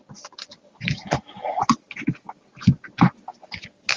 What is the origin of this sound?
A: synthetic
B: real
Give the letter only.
B